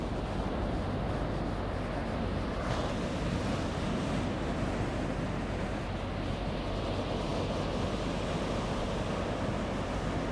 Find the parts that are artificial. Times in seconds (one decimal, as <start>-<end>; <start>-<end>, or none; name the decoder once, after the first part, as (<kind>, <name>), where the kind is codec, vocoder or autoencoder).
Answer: none